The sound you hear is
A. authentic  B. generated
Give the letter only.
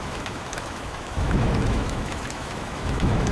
B